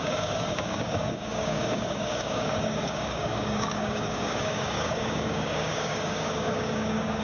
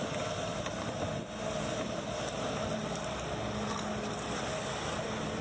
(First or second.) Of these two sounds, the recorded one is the second